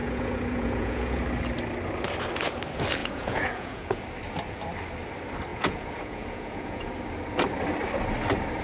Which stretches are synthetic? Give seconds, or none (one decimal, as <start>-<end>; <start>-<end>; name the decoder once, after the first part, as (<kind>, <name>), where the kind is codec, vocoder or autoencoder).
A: 0.0-1.2 (vocoder, Vocos); 3.0-4.0; 5.5-6.9